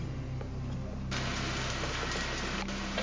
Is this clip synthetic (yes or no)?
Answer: no